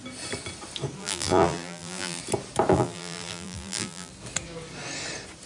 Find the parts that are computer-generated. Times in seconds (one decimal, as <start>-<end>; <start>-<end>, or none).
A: 1.0-2.2; 2.7-4.1